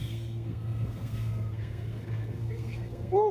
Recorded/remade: remade